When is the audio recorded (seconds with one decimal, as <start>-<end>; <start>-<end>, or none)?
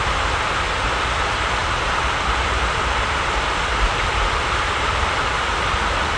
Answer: 0.0-1.6; 5.2-6.2